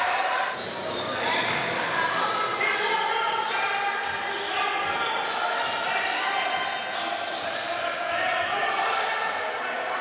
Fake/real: real